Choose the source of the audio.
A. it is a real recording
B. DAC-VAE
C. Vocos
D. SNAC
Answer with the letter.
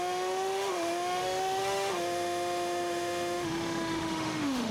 B